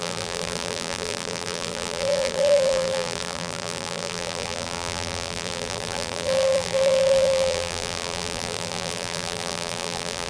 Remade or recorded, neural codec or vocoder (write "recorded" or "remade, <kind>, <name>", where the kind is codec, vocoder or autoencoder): remade, vocoder, BigVGAN v2